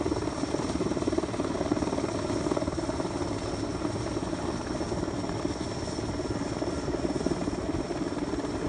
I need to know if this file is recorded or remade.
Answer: recorded